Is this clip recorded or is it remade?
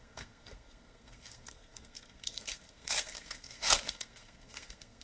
remade